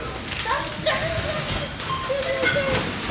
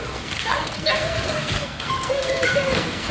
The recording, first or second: first